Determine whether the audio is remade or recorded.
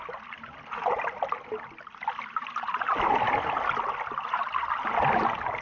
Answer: recorded